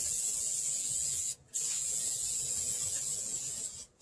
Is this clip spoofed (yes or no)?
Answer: yes